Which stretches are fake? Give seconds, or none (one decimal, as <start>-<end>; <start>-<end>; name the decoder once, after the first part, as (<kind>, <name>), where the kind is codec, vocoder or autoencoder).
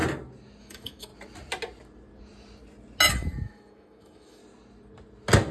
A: 0.6-1.1 (autoencoder, DAC-VAE); 3.1-4.4